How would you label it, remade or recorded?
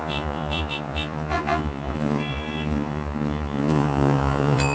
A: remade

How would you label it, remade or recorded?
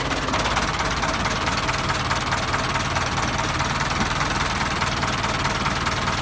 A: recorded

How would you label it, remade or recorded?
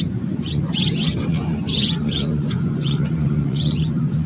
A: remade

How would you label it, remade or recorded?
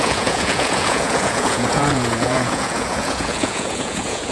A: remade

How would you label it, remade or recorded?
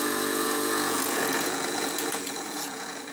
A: remade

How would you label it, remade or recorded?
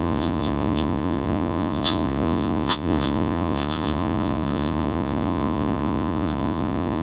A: remade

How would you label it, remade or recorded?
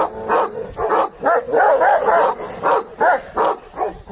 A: recorded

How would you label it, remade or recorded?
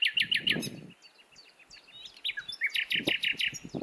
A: recorded